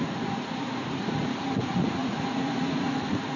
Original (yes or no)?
no